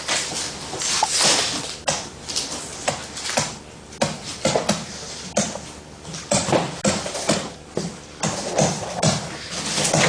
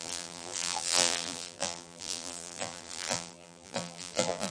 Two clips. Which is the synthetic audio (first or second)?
second